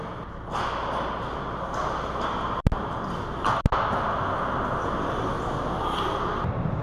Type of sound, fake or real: real